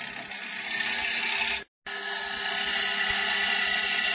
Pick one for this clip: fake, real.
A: real